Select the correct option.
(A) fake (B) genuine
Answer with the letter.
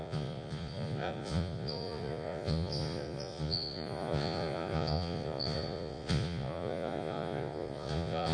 A